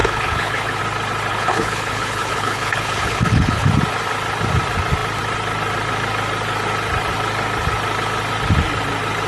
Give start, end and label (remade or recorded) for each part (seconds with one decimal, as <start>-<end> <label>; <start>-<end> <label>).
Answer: 0.0-0.8 remade; 0.8-1.3 recorded; 1.3-3.7 remade; 3.7-9.3 recorded